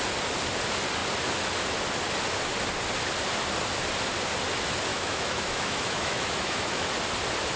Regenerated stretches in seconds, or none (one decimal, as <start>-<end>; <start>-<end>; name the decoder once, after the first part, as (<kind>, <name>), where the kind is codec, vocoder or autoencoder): 4.9-6.9 (autoencoder, DAC-VAE)